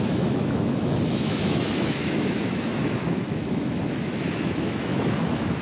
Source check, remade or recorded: remade